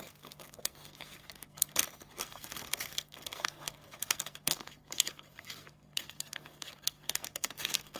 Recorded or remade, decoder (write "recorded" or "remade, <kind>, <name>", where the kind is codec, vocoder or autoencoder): remade, codec, SNAC